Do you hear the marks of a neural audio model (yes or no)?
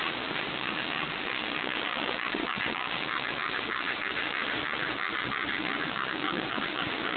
yes